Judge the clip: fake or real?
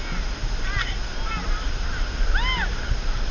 real